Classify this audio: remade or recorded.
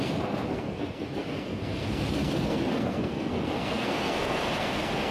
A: remade